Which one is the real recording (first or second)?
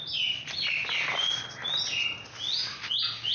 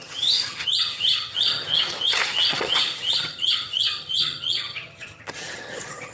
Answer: first